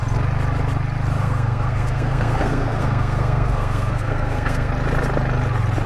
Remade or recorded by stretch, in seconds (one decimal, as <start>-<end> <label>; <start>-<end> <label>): 0.0-1.2 recorded; 1.2-4.7 remade; 4.7-5.9 recorded